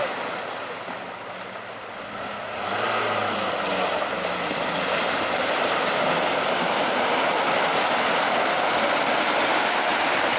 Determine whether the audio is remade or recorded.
recorded